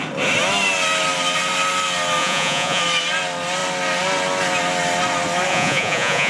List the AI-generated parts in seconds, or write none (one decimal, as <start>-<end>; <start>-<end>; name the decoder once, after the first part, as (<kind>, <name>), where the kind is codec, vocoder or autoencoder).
2.2-2.8 (vocoder, Vocos); 5.5-6.3